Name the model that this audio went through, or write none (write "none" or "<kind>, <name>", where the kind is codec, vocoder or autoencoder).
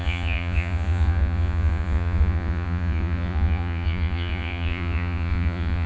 vocoder, Vocos